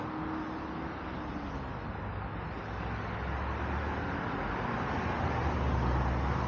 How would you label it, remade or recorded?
recorded